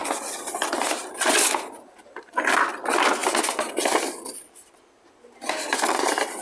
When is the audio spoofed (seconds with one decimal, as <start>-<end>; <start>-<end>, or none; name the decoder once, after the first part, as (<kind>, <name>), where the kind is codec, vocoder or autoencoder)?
none